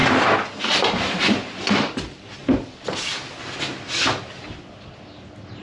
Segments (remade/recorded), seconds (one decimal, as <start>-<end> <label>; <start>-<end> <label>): 0.0-0.6 recorded; 0.6-2.4 remade; 2.4-5.6 recorded